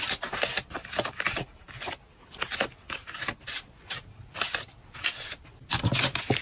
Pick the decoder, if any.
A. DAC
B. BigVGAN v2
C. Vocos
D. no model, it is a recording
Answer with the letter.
D